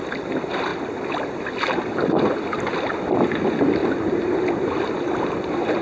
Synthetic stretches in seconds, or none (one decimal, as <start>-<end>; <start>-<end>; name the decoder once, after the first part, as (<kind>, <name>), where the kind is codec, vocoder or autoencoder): none